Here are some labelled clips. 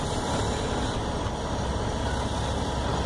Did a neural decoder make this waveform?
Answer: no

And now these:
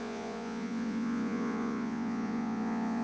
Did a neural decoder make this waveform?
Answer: yes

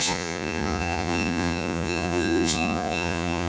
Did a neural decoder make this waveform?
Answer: yes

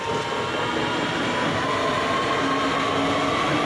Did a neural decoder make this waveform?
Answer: no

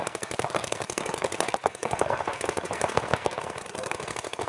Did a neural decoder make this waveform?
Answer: yes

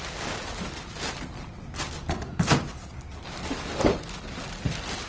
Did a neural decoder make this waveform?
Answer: no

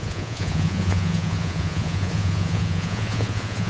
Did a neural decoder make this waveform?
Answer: yes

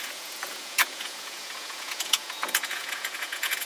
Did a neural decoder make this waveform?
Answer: yes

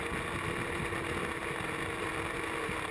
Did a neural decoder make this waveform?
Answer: no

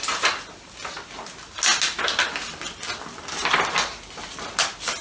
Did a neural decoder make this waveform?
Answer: no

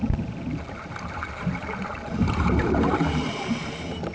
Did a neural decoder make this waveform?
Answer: yes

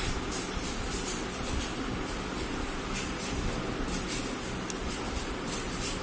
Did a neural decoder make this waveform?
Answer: no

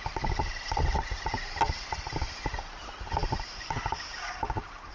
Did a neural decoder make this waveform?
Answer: no